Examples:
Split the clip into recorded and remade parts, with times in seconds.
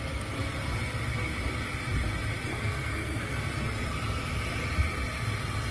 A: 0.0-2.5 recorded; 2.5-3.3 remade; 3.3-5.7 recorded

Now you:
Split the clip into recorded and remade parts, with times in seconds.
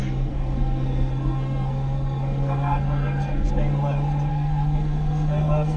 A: 0.0-3.5 remade; 3.5-4.3 recorded; 4.3-5.8 remade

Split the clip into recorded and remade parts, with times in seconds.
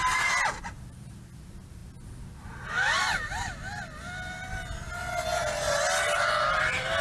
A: 0.0-7.0 recorded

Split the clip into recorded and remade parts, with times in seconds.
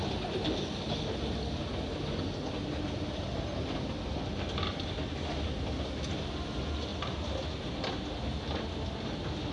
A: 0.0-9.5 recorded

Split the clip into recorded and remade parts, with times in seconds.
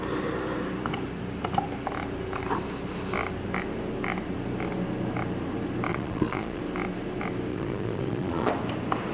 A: 0.0-5.9 recorded; 5.9-6.6 remade; 6.6-7.5 recorded; 7.5-8.5 remade; 8.5-9.1 recorded